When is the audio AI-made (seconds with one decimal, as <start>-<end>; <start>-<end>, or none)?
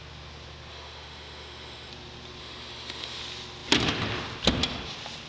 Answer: 0.7-1.9; 2.4-3.2